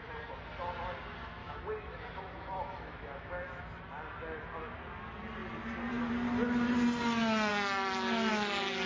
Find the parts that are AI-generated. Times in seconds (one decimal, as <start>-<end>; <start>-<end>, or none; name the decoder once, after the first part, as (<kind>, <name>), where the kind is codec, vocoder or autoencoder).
1.4-3.8 (autoencoder, DAC-VAE)